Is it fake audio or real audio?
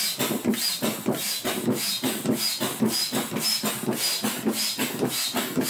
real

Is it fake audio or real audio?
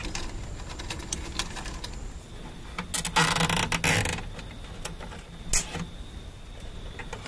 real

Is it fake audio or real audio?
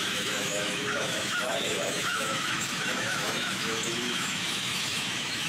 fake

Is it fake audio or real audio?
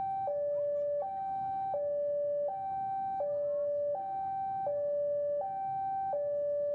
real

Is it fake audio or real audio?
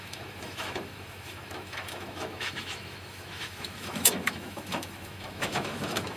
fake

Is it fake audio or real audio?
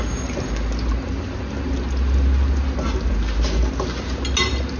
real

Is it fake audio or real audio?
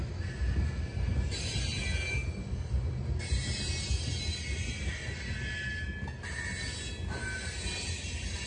real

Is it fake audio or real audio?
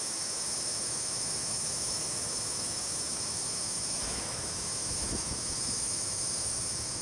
fake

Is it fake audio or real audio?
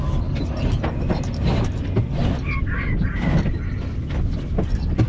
real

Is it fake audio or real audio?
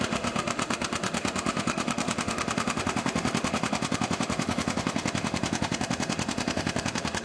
fake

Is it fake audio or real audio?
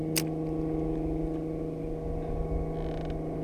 real